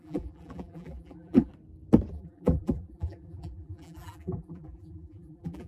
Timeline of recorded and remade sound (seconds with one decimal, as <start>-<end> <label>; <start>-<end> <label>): 0.0-1.5 remade; 1.5-2.1 recorded; 2.1-5.7 remade

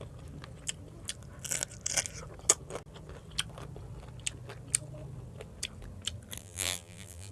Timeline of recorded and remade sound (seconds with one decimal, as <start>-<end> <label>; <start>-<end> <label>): 0.0-6.4 recorded; 6.4-7.3 remade

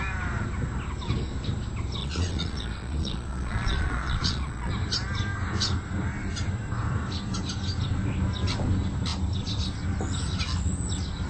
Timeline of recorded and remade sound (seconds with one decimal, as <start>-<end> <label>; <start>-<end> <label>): 0.0-2.0 recorded; 2.0-4.7 remade; 4.7-11.3 recorded

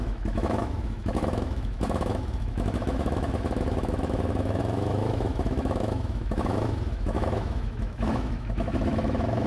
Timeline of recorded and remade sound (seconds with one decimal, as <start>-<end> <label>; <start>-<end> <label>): 0.0-9.5 remade